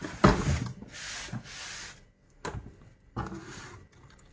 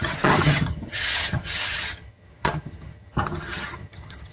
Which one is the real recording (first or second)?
first